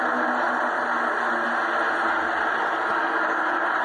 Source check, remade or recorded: recorded